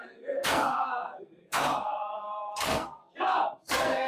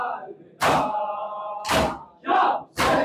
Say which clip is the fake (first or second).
first